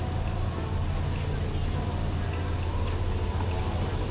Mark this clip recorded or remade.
recorded